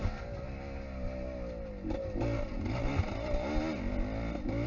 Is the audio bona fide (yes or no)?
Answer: yes